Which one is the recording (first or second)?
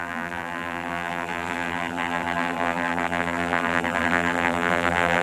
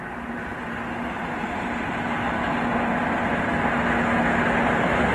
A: second